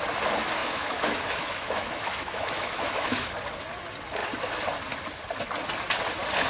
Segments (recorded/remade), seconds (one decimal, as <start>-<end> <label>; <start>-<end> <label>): 0.0-0.6 recorded; 0.6-3.3 remade; 3.3-6.5 recorded